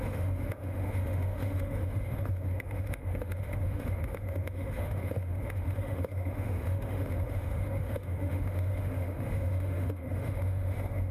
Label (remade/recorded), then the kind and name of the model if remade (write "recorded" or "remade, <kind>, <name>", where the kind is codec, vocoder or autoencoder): remade, autoencoder, DAC-VAE